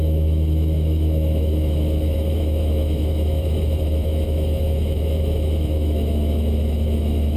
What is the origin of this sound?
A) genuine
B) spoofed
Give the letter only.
B